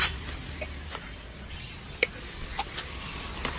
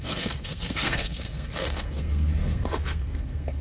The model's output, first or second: second